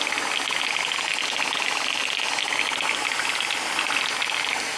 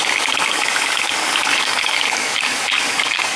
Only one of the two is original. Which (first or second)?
first